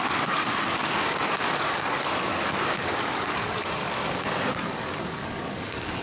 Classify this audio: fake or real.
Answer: fake